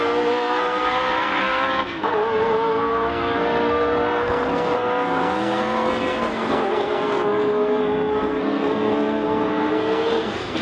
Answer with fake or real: fake